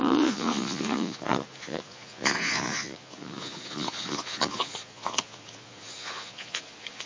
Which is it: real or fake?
fake